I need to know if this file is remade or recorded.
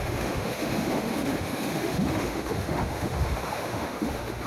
remade